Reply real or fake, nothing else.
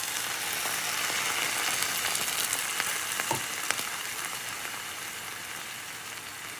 real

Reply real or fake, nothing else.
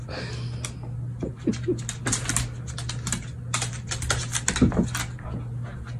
real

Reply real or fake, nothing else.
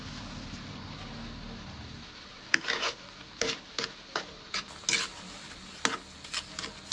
real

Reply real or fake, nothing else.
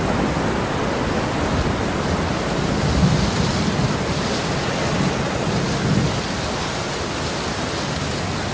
real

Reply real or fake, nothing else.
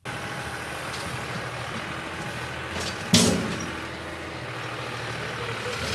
real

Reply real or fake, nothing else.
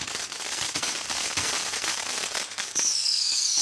fake